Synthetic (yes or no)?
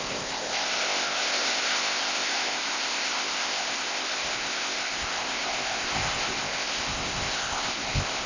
yes